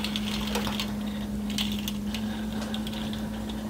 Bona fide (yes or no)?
yes